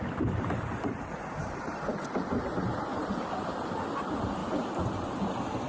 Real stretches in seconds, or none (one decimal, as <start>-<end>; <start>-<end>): 0.0-1.4; 2.0-2.9; 3.7-4.4; 5.1-5.7